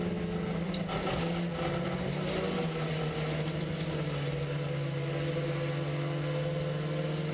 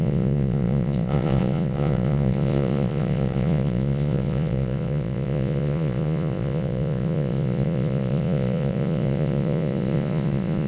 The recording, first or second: first